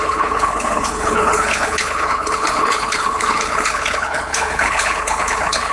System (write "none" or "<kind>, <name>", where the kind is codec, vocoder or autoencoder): codec, HILCodec